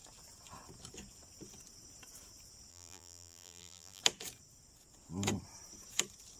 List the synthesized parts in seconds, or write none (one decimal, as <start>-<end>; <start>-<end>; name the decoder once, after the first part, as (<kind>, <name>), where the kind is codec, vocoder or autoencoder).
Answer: 2.7-4.0 (vocoder, BigVGAN v2)